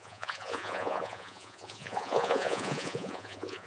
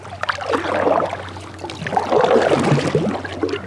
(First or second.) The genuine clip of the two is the second